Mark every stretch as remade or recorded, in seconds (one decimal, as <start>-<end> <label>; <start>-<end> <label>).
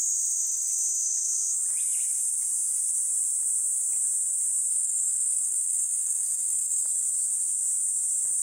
0.0-4.7 recorded; 4.7-6.9 remade; 6.9-8.4 recorded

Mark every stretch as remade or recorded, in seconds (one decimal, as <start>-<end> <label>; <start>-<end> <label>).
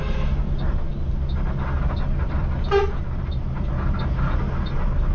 0.0-5.1 recorded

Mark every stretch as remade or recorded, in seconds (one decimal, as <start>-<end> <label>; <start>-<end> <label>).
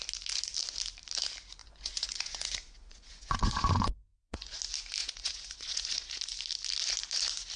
0.0-1.6 recorded; 1.6-4.6 remade; 4.6-5.0 recorded; 5.0-6.1 remade; 6.1-7.6 recorded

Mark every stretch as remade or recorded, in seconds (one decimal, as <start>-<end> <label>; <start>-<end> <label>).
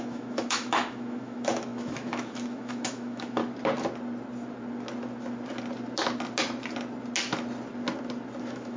0.0-3.4 remade; 3.4-8.4 recorded; 8.4-8.8 remade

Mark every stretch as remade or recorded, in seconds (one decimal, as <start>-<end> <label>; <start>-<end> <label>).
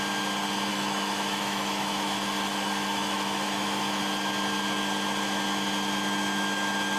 0.0-0.7 recorded; 0.7-4.0 remade; 4.0-7.0 recorded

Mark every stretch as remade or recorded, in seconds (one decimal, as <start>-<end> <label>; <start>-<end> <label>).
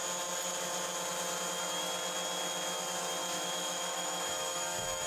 0.0-3.2 recorded; 3.2-5.1 remade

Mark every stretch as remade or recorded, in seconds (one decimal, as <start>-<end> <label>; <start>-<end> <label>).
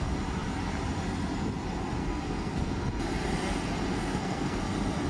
0.0-2.0 recorded; 2.0-2.8 remade; 2.8-3.9 recorded; 3.9-4.6 remade; 4.6-5.1 recorded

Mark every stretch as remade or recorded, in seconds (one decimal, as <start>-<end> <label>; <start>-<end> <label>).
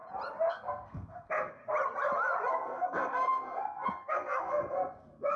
0.0-0.5 recorded; 0.5-1.6 remade; 1.6-2.5 recorded; 2.5-5.4 remade